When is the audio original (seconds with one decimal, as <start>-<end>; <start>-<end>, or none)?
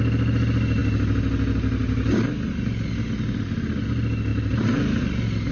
0.0-4.3; 5.0-5.5